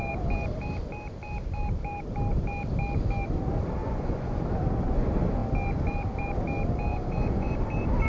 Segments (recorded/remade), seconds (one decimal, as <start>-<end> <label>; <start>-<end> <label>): 0.0-3.8 recorded; 3.8-4.4 remade; 4.4-6.9 recorded; 6.9-7.5 remade; 7.5-8.1 recorded